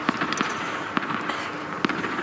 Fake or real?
real